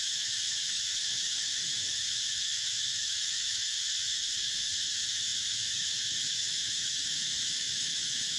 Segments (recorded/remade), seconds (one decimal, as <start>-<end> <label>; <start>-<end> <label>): 0.0-8.4 remade